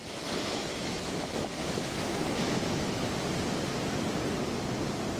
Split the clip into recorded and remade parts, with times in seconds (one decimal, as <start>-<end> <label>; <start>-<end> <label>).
0.0-3.1 remade; 3.1-5.2 recorded